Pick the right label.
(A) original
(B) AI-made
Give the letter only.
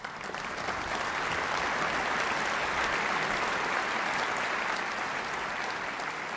A